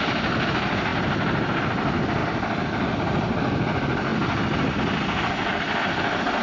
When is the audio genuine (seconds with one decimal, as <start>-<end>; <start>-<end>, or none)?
0.0-6.4